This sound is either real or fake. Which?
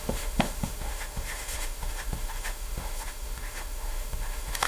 fake